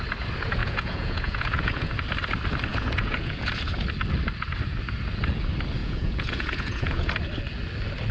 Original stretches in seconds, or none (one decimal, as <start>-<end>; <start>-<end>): 0.0-0.6; 1.9-2.7; 3.5-5.8; 7.1-8.1